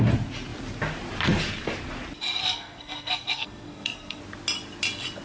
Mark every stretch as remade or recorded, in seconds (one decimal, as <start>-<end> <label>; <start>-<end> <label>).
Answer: 0.0-2.4 recorded; 2.4-4.2 remade; 4.2-5.2 recorded